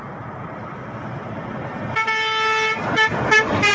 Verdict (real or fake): real